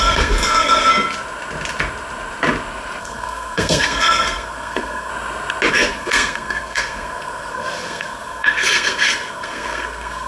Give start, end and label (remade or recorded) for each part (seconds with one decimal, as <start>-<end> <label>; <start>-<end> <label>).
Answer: 0.0-0.9 remade; 0.9-3.0 recorded; 3.0-5.1 remade; 5.1-5.7 recorded; 5.7-10.3 remade